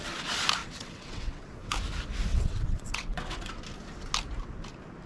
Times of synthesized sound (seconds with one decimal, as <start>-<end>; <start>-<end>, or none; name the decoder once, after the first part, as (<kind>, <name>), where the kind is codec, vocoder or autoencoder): 0.6-1.7 (vocoder, WaveNeXt); 2.3-3.6